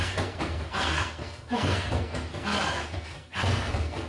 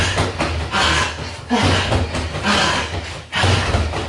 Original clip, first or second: second